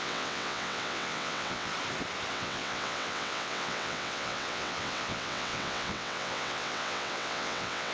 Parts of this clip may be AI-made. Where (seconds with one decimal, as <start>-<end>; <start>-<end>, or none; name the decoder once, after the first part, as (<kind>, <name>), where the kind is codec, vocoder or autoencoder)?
0.0-1.7 (vocoder, WaveNeXt); 2.3-7.9